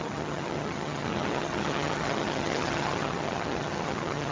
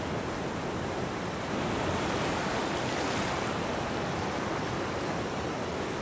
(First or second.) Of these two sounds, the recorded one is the second